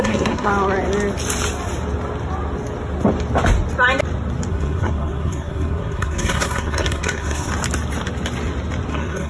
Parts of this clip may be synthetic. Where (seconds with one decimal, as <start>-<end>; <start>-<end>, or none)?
0.0-0.5; 4.5-7.5; 8.9-9.3